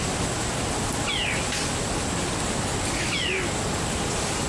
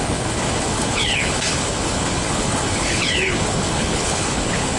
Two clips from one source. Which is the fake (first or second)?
second